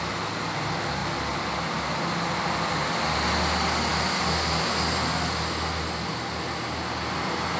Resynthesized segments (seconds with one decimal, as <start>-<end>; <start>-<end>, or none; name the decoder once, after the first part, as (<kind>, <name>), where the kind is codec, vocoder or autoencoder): none